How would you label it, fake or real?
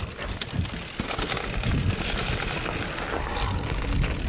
real